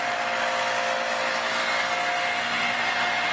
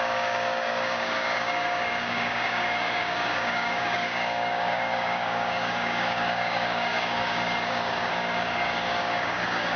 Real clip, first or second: first